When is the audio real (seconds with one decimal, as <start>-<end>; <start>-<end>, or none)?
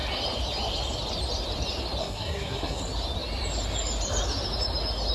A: 0.0-2.0; 2.8-5.1